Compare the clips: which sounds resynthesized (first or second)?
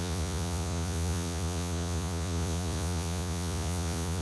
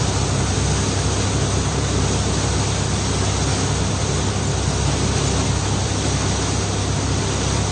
first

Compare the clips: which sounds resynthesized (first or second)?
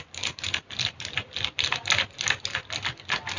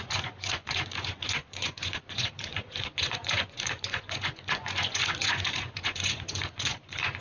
second